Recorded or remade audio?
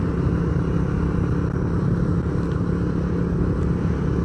recorded